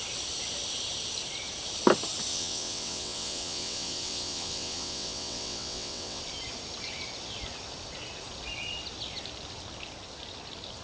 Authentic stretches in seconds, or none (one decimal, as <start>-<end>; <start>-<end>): 0.0-2.3; 6.2-10.8